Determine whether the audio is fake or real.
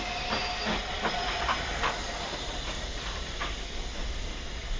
real